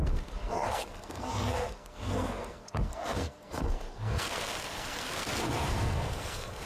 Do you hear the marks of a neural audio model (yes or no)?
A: yes